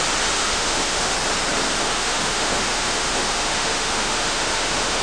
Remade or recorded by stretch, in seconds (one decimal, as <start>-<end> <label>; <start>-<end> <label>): 0.0-0.4 recorded; 0.4-1.1 remade; 1.1-1.8 recorded; 1.8-5.0 remade